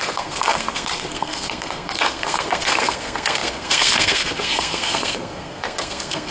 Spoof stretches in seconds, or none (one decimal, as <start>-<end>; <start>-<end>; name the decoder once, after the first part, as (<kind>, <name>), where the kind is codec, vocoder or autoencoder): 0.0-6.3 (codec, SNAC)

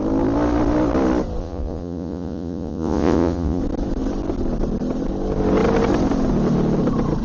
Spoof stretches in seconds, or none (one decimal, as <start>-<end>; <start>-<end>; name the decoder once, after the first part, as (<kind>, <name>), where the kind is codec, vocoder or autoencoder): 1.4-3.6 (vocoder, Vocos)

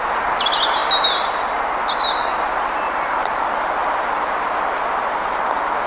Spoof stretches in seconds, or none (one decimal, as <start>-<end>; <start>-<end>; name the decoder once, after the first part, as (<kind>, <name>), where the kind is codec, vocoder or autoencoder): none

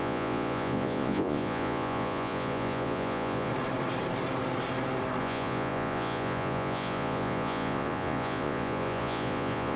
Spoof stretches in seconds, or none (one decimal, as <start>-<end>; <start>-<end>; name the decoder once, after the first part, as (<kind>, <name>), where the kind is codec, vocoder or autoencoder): 0.0-3.5 (vocoder, Vocos); 5.2-9.8